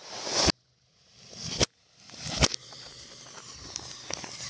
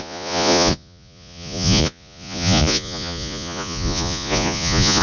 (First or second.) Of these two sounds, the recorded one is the first